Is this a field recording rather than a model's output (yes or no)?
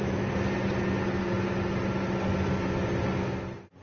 yes